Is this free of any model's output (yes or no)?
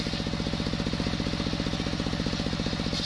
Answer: yes